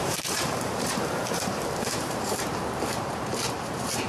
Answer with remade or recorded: remade